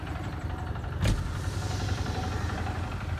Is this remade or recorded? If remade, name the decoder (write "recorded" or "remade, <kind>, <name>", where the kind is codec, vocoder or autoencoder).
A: recorded